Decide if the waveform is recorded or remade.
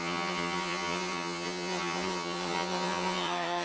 remade